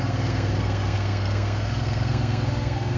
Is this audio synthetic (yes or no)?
yes